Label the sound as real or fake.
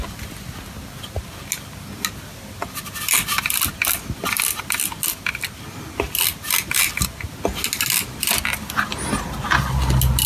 real